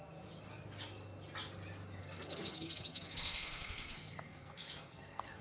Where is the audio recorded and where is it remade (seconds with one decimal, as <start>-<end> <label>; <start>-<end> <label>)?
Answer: 0.0-2.0 recorded; 2.0-5.4 remade